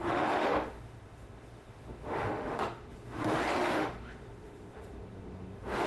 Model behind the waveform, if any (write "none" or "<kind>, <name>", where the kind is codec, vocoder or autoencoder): autoencoder, DAC-VAE